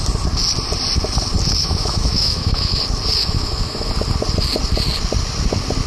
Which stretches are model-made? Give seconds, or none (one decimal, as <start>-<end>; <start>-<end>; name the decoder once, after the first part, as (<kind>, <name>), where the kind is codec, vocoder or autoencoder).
1.6-2.8 (autoencoder, DAC-VAE); 3.2-3.9